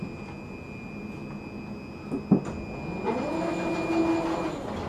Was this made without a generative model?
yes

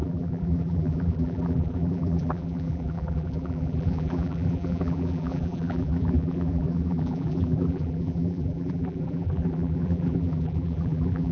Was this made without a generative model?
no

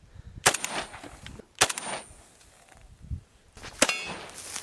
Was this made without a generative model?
yes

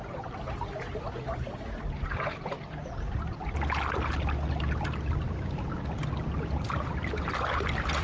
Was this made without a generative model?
yes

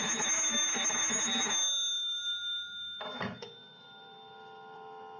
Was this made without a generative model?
no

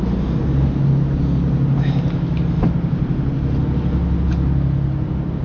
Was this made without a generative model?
yes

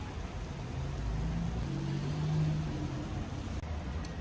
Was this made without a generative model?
yes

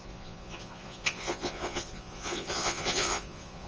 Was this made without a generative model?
no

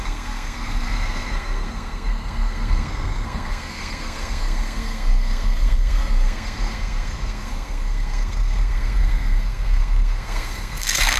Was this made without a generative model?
no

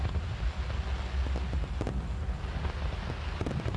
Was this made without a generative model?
yes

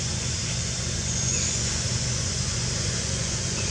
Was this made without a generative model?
no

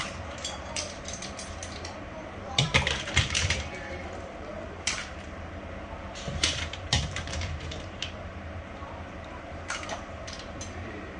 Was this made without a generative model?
no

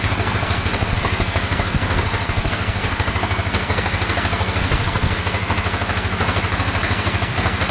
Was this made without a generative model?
no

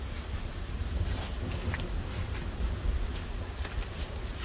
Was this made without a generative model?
yes